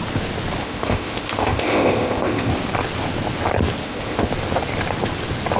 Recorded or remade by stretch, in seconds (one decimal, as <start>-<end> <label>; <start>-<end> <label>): 0.0-0.6 recorded; 0.6-2.5 remade; 2.5-3.8 recorded; 3.8-4.3 remade; 4.3-5.6 recorded